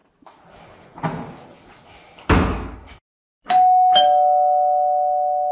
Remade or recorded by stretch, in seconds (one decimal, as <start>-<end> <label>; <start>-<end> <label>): 0.0-5.5 recorded